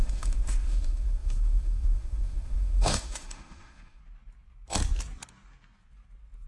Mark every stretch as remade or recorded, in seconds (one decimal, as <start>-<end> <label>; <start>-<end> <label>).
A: 0.0-4.0 remade; 4.0-6.5 recorded